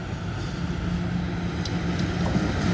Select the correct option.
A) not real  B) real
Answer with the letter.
B